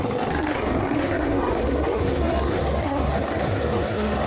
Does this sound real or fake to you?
fake